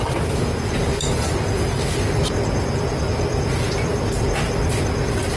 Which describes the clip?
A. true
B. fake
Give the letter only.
A